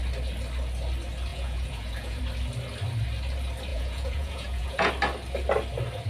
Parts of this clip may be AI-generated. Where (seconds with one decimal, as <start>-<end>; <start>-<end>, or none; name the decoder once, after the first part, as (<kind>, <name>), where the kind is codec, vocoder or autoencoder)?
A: 1.3-2.2 (vocoder, Vocos); 3.7-4.9